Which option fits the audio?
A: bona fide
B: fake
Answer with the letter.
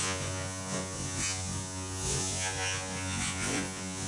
B